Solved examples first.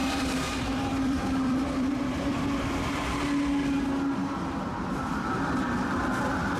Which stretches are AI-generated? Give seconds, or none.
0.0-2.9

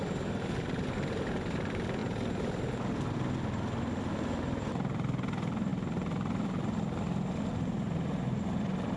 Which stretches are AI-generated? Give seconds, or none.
none

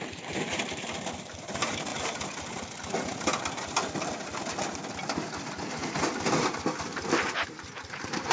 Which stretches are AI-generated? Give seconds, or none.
0.0-1.9; 6.4-8.3

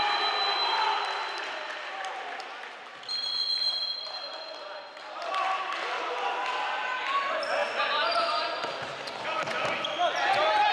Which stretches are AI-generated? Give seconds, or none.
none